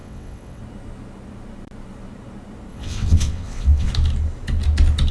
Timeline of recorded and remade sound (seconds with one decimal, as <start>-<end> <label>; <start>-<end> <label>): 0.0-0.6 remade; 0.6-2.7 recorded; 2.7-3.9 remade; 3.9-5.1 recorded